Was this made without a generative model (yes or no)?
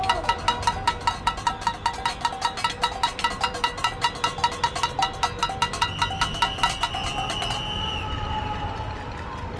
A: yes